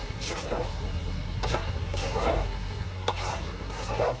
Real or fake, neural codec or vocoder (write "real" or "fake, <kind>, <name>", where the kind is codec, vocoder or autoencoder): fake, codec, SNAC